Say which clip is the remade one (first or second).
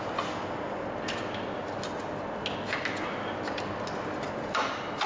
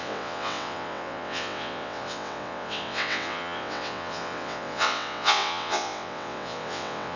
second